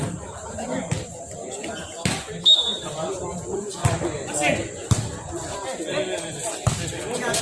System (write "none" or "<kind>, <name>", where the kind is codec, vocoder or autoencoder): none